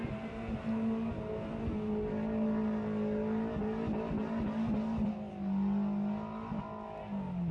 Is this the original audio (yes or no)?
yes